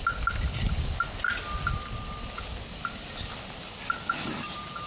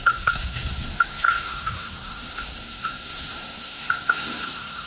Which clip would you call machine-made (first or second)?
second